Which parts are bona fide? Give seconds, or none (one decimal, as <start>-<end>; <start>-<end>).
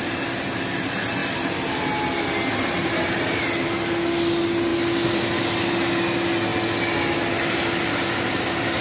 0.0-2.5; 3.4-8.8